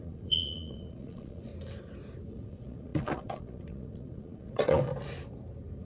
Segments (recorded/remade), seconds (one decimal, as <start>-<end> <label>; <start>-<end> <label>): 0.0-1.5 remade; 1.5-2.3 recorded; 2.3-4.9 remade; 4.9-5.8 recorded